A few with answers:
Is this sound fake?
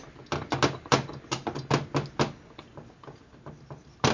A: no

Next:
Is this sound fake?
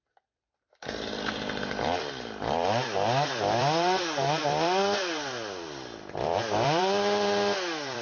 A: yes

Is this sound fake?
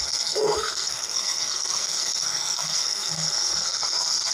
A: yes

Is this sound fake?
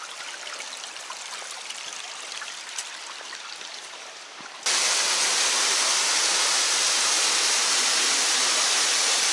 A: no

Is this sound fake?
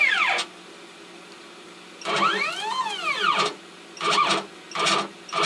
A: no